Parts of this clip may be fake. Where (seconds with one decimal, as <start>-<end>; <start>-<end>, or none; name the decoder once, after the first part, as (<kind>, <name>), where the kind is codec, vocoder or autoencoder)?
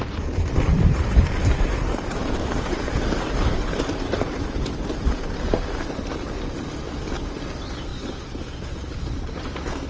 0.7-5.5 (vocoder, BigVGAN v2); 7.9-9.4